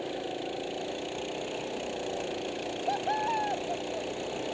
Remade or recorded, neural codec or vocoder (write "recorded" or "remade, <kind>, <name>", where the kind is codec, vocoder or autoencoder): recorded